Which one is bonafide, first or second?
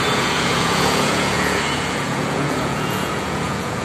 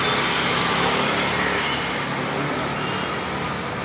second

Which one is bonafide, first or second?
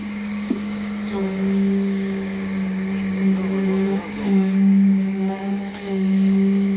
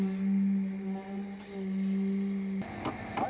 second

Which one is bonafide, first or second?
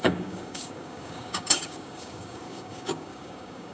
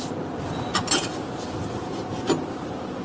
second